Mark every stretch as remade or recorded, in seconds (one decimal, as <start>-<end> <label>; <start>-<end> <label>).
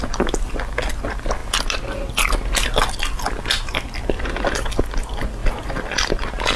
0.0-6.6 recorded